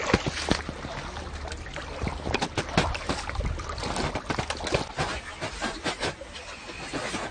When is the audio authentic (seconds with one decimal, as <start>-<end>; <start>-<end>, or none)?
0.0-7.3